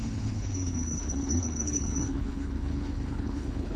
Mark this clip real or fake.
fake